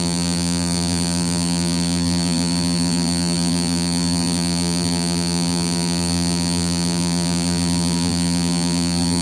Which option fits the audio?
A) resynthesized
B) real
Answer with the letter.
A